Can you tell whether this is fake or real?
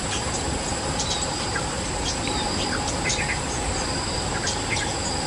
real